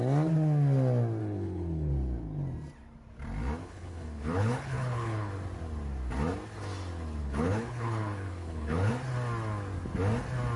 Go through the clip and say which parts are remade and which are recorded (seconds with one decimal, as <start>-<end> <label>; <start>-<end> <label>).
0.0-1.2 recorded; 1.2-1.9 remade; 1.9-3.6 recorded; 3.6-5.3 remade; 5.3-7.2 recorded; 7.2-8.9 remade; 8.9-10.6 recorded